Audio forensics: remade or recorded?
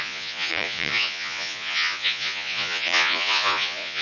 remade